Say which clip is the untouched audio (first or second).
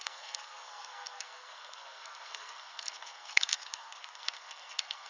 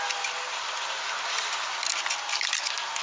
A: second